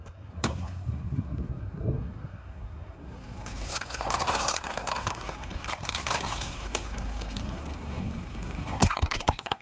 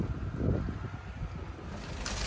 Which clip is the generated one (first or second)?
first